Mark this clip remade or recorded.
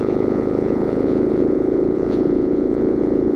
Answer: remade